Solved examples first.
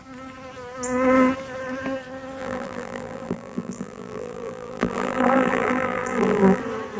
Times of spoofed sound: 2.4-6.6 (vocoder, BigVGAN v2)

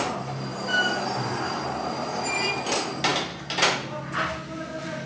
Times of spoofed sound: none

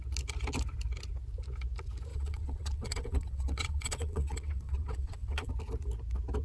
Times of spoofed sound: 2.1-5.5 (vocoder, WaveNeXt)

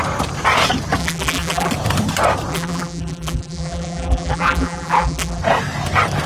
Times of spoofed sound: 1.0-1.7 (vocoder, BigVGAN v2); 2.5-5.4

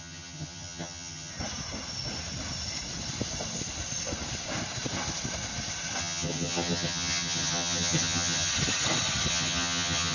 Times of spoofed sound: 0.0-1.3 (vocoder, HiFi-GAN); 6.0-8.5; 9.3-10.1

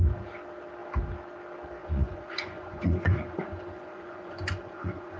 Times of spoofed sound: 1.8-5.2 (vocoder, Vocos)

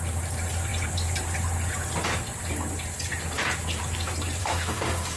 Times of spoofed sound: 4.4-5.2 (autoencoder, DAC-VAE)

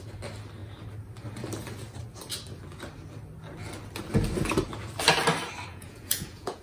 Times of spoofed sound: 5.7-6.6 (vocoder, Vocos)